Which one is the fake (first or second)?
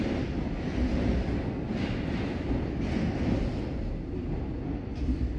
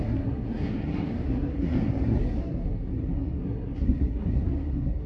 second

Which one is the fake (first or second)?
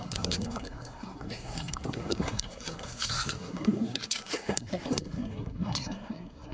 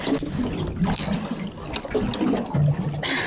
first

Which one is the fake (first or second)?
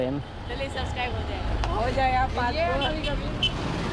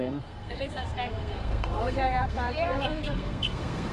second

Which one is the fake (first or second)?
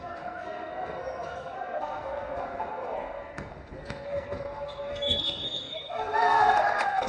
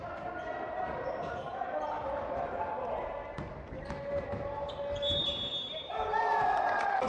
first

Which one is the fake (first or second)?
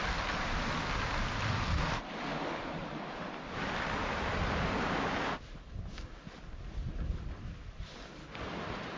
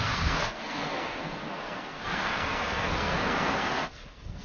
second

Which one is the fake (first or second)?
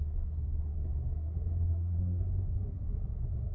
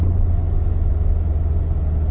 first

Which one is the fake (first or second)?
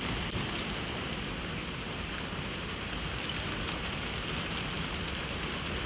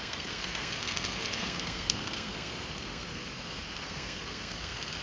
second